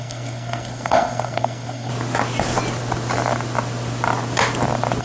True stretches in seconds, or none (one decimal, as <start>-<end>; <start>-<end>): 1.9-5.0